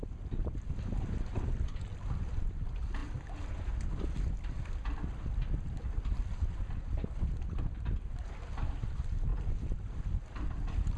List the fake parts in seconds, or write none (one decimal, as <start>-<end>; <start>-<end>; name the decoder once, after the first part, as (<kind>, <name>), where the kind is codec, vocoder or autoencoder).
none

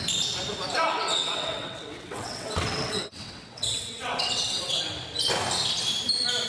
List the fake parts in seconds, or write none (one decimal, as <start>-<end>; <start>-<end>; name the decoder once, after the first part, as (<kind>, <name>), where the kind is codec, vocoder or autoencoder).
0.9-4.8 (vocoder, WaveNeXt)

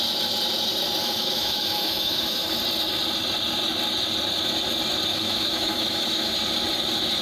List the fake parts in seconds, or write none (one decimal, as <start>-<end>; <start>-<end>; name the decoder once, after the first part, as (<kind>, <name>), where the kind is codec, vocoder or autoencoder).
1.0-2.6 (autoencoder, DAC-VAE); 5.1-6.3

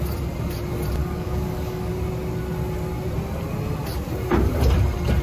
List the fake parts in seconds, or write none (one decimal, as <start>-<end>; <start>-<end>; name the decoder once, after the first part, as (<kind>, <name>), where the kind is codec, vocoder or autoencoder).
1.0-1.9 (codec, DAC)

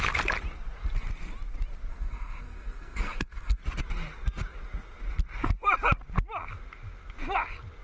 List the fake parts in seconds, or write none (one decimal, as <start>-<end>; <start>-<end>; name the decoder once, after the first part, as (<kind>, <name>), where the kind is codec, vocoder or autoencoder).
1.9-3.6 (codec, SNAC)

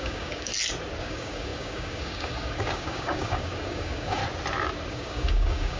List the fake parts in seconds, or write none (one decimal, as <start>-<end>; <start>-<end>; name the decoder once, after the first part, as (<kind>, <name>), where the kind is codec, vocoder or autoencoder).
0.0-0.5 (codec, DAC); 1.0-4.2; 4.9-5.8

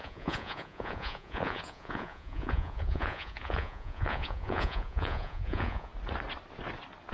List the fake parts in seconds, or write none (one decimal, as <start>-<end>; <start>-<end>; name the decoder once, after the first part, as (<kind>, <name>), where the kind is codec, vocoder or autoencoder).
0.0-5.9 (vocoder, Vocos)